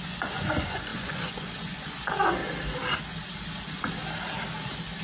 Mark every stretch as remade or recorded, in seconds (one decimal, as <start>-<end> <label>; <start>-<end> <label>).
0.0-2.4 remade; 2.4-5.0 recorded